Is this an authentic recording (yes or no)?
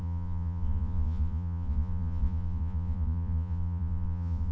no